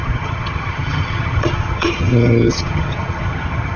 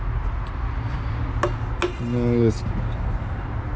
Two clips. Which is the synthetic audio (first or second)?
first